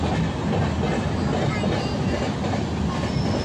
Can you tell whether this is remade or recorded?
recorded